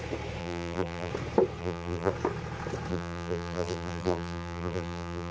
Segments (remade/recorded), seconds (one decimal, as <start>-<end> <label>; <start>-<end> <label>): 0.0-0.4 recorded; 0.4-1.1 remade; 1.1-1.6 recorded; 1.6-2.1 remade; 2.1-2.9 recorded; 2.9-5.3 remade